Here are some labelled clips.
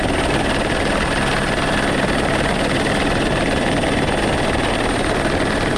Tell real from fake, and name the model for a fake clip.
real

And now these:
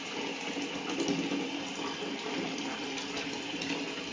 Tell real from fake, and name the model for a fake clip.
real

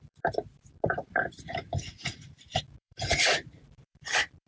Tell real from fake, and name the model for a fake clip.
fake, vocoder, BigVGAN v2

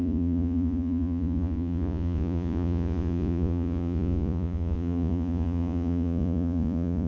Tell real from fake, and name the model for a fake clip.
fake, vocoder, Vocos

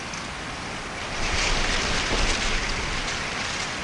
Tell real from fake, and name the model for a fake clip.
real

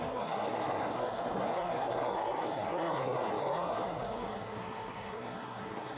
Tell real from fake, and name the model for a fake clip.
fake, codec, SNAC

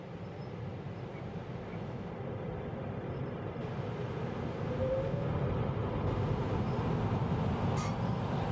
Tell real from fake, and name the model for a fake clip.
real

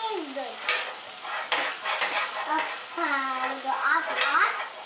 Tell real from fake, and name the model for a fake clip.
real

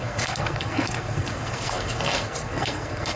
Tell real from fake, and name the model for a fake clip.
fake, codec, SNAC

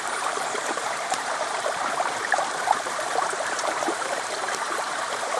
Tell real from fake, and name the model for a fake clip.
fake, vocoder, BigVGAN v2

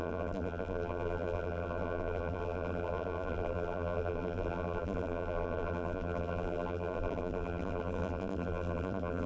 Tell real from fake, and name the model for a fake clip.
fake, vocoder, BigVGAN v2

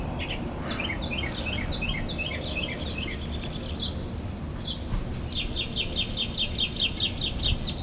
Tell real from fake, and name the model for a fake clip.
real